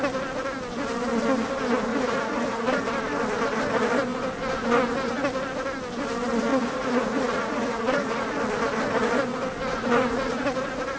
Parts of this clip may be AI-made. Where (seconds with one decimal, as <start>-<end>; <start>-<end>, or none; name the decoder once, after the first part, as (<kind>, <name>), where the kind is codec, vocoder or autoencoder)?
1.9-2.8 (vocoder, Vocos); 6.5-8.4; 9.7-11.0